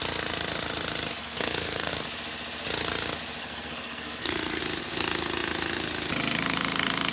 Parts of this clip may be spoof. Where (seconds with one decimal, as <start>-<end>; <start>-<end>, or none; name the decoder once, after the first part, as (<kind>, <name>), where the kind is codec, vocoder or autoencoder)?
1.2-1.9 (codec, SNAC); 3.4-4.6